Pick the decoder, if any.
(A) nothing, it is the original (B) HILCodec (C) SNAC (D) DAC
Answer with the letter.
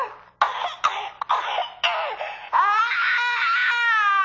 A